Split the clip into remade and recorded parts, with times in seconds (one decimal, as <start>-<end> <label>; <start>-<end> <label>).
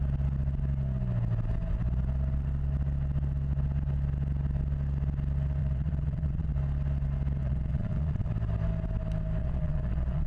0.0-5.6 recorded; 5.6-6.5 remade; 6.5-7.4 recorded; 7.4-8.3 remade; 8.3-9.4 recorded; 9.4-10.3 remade